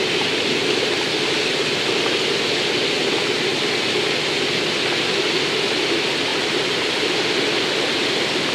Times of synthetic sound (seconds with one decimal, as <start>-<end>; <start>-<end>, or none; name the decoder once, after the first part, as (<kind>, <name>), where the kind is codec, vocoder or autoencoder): none